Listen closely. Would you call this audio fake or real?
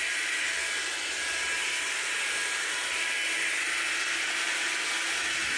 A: real